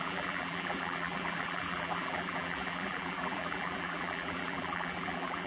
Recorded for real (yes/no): no